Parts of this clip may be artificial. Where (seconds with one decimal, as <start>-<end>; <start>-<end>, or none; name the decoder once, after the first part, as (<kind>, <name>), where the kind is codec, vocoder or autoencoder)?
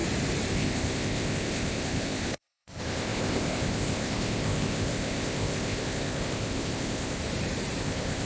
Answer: 0.5-7.2 (codec, ZipCodec); 7.8-8.3